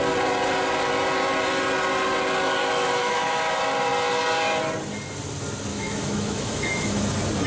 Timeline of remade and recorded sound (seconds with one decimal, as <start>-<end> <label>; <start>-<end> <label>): 0.0-2.6 recorded; 2.6-3.4 remade; 3.4-5.7 recorded; 5.7-7.0 remade; 7.0-7.5 recorded